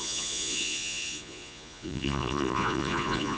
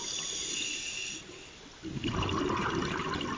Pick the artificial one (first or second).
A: first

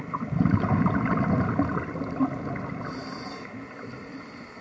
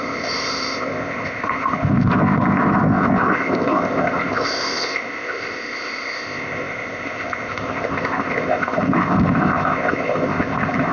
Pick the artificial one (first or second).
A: second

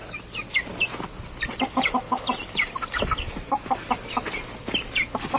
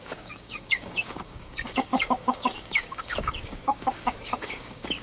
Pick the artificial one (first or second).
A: second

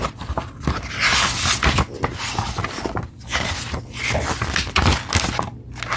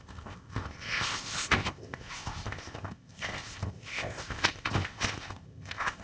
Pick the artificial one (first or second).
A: second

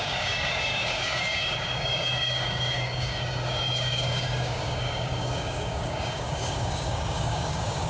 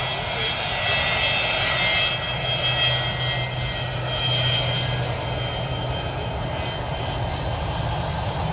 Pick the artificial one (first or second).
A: first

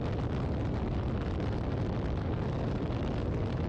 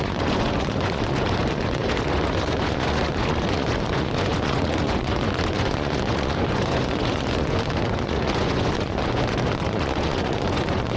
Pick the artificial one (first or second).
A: second